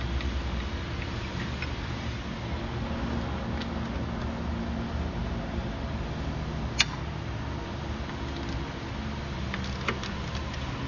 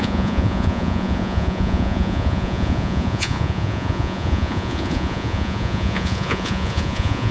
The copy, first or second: second